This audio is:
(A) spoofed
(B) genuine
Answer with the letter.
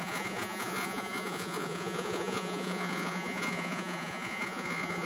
A